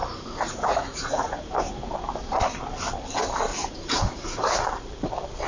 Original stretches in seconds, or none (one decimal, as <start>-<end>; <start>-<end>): 1.4-3.5; 4.5-5.5